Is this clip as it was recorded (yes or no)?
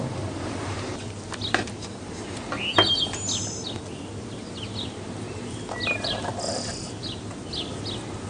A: yes